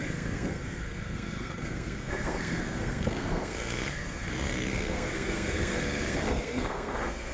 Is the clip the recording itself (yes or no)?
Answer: no